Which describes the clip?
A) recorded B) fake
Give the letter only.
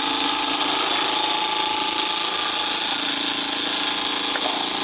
A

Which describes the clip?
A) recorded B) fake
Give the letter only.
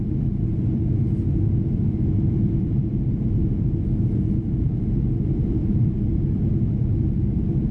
A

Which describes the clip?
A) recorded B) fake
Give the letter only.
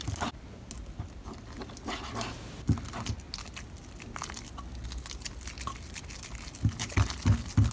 A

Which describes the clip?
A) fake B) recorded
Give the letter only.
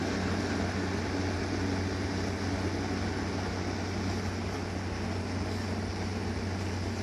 B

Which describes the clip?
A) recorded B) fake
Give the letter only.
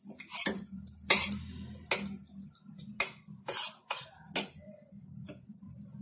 A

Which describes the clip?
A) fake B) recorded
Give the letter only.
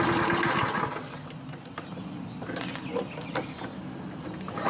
B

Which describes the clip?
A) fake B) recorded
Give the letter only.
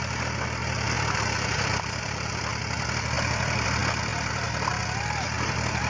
A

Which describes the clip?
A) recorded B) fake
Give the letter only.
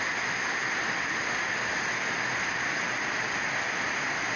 A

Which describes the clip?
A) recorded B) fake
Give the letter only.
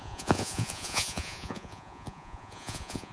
B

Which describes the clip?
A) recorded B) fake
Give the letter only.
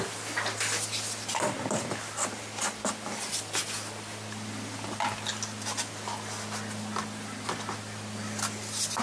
A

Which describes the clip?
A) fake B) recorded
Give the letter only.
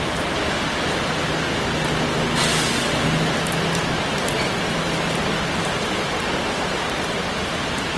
B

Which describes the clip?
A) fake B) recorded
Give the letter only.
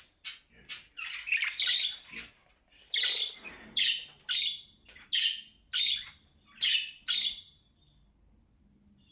B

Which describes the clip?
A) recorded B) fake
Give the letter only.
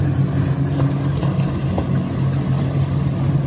A